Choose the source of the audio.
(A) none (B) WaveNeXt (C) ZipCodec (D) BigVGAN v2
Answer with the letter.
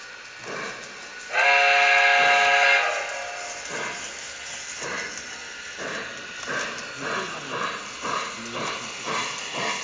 A